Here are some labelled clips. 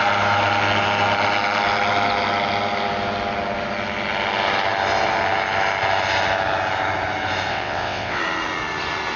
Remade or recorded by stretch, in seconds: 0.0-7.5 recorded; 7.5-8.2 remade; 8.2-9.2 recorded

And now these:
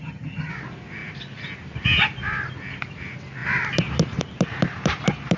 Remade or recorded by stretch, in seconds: 0.0-0.5 remade; 0.5-5.4 recorded

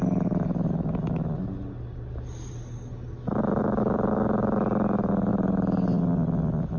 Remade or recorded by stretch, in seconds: 0.0-6.8 recorded